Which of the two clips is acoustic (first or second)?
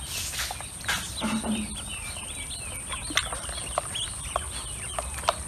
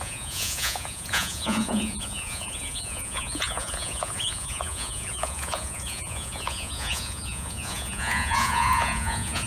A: first